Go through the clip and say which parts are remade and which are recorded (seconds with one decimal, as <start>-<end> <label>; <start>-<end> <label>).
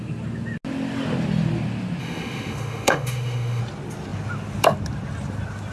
0.0-2.0 recorded; 2.0-3.6 remade; 3.6-5.7 recorded